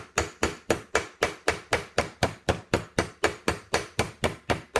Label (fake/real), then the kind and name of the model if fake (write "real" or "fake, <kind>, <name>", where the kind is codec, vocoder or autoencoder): real